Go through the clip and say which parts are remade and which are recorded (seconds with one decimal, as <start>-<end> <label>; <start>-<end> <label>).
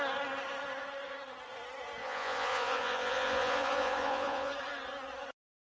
0.0-2.0 recorded; 2.0-4.5 remade; 4.5-5.6 recorded